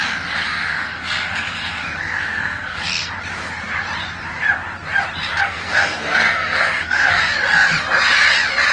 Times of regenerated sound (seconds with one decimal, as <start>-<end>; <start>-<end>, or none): 0.4-3.1; 5.3-7.2